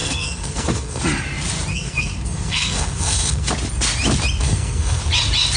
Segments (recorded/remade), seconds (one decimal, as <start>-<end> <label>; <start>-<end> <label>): 0.0-1.0 remade; 1.0-1.7 recorded; 1.7-3.5 remade; 3.5-4.4 recorded; 4.4-5.0 remade; 5.0-5.6 recorded